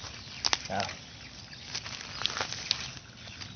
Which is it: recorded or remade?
recorded